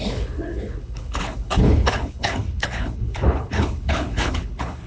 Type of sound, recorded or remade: remade